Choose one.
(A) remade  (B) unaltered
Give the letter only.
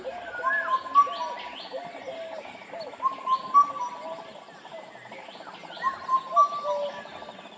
B